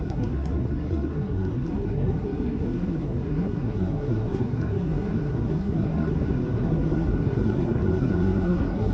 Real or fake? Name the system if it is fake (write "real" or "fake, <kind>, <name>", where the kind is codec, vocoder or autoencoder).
fake, codec, SNAC